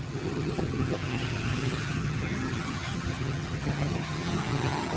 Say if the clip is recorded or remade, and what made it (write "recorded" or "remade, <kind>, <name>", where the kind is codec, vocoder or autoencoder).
remade, vocoder, HiFi-GAN